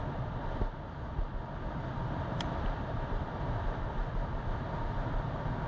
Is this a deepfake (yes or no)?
no